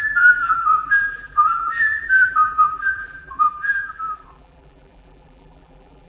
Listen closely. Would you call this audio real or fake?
fake